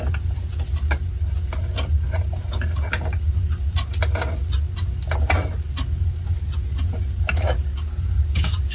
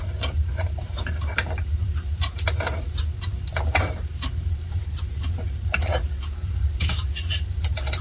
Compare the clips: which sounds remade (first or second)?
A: second